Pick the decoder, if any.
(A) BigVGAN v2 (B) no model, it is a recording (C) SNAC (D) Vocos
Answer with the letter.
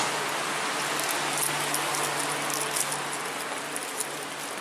B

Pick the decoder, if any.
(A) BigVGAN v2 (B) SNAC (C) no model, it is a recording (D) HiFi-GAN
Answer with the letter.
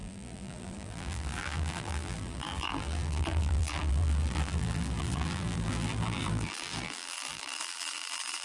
A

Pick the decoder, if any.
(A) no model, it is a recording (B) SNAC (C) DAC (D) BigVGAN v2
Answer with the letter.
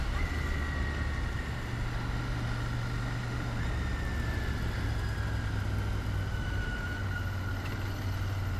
A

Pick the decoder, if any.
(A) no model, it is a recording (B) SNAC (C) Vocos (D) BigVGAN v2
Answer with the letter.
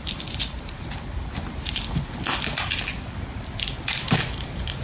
D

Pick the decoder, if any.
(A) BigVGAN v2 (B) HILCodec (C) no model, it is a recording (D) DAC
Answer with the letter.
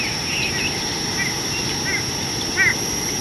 C